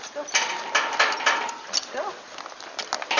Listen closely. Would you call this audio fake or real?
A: real